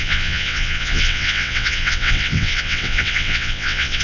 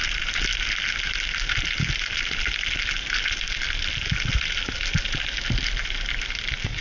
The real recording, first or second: second